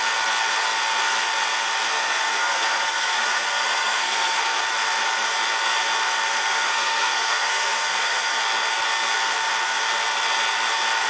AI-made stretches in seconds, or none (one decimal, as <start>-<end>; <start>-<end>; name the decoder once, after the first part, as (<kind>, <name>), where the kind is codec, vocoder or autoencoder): 1.9-4.6 (codec, SNAC); 6.5-8.4